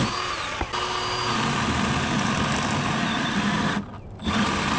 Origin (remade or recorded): recorded